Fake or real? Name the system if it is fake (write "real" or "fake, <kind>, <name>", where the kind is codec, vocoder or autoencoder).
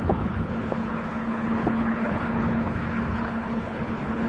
fake, codec, HILCodec